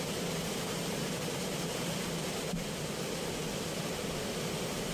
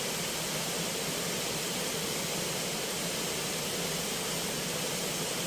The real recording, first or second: second